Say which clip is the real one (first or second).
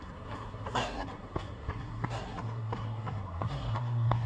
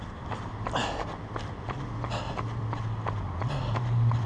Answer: second